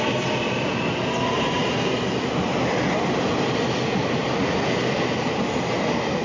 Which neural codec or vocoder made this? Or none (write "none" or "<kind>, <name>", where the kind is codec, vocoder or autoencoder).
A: none